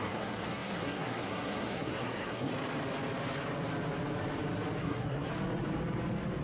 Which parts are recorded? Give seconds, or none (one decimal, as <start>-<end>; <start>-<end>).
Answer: 2.5-4.8; 5.3-6.4